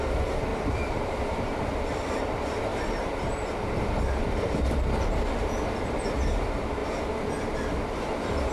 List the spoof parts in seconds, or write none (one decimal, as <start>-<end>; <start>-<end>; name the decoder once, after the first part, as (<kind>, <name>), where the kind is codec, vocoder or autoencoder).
0.5-2.2 (vocoder, BigVGAN v2)